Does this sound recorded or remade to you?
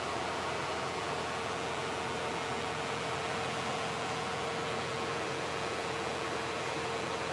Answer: remade